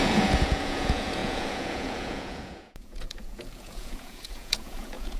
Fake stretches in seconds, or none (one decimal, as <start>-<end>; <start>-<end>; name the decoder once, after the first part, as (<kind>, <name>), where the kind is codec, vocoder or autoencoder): 0.0-5.2 (vocoder, Vocos)